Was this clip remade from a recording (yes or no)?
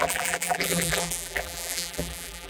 yes